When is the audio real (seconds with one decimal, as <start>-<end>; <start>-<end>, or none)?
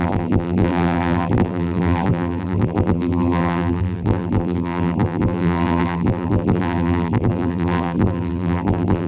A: none